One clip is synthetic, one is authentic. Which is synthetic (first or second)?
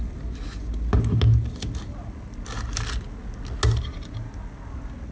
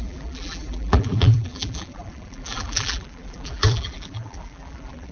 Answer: second